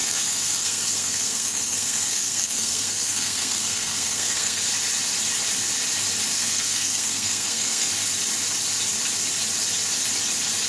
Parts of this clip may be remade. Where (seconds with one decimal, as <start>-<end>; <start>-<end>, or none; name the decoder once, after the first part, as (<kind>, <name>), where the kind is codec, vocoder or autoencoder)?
0.0-4.6 (codec, SNAC); 6.3-7.9